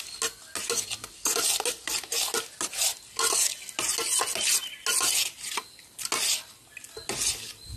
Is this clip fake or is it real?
real